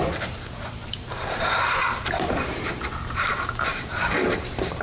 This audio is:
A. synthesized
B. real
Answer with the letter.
A